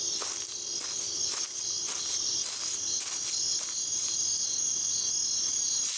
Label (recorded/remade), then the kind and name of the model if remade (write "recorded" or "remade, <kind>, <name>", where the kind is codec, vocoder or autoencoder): recorded